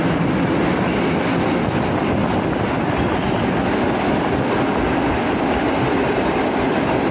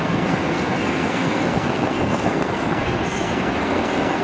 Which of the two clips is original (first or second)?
first